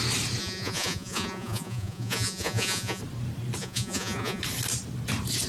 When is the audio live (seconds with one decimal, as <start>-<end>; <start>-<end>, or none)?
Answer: 0.0-0.4; 3.0-3.6; 4.4-5.5